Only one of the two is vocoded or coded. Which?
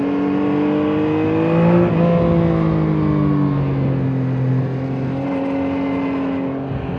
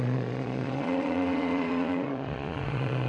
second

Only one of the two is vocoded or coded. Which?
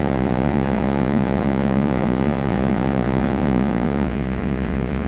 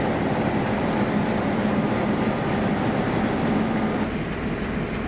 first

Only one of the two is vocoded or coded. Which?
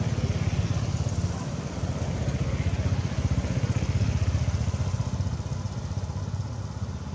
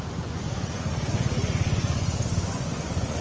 second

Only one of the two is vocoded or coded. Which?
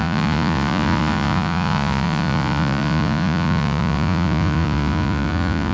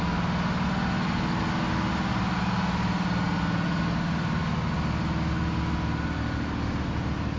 first